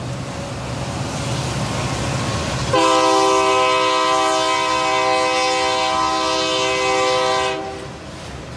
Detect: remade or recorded recorded